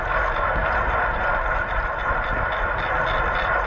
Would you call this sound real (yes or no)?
yes